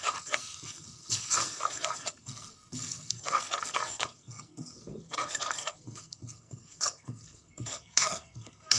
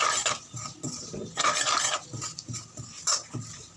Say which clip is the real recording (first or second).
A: second